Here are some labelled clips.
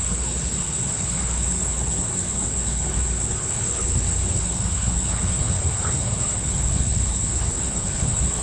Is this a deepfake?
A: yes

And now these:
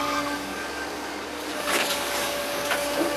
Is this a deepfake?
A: yes